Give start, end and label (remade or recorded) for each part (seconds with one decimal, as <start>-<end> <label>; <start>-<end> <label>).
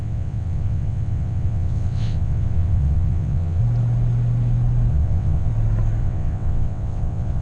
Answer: 0.0-3.6 remade; 3.6-4.9 recorded; 4.9-5.5 remade; 5.5-6.0 recorded; 6.0-7.4 remade